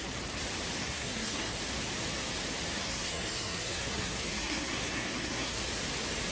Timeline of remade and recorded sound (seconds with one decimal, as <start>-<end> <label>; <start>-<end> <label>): 0.0-0.8 recorded; 0.8-1.6 remade; 1.6-2.8 recorded; 2.8-5.6 remade; 5.6-6.3 recorded